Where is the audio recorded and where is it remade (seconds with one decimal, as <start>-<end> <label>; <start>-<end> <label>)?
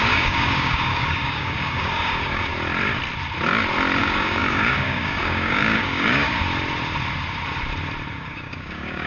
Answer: 0.0-2.5 remade; 2.5-4.0 recorded; 4.0-6.4 remade; 6.4-8.1 recorded; 8.1-9.1 remade